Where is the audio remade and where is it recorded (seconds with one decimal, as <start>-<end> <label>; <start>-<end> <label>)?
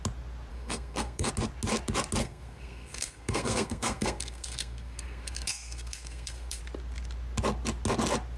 0.0-0.5 recorded; 0.5-1.3 remade; 1.3-2.2 recorded; 2.2-6.6 remade; 6.6-8.4 recorded